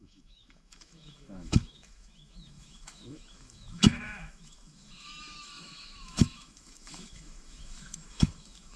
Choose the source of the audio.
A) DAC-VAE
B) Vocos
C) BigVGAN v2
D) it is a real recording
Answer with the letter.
A